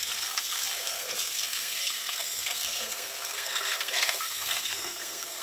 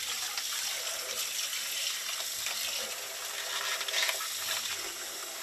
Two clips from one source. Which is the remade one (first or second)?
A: first